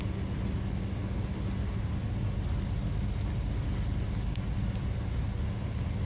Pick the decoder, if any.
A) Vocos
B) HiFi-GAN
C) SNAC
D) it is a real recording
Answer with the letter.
D